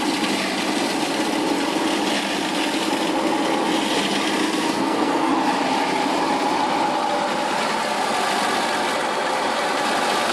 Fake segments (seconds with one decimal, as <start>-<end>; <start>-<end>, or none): 4.4-5.3